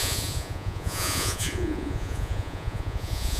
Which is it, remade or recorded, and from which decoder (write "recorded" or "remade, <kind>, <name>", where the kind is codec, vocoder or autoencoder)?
remade, vocoder, Vocos